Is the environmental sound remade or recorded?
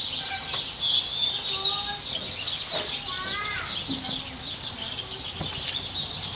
recorded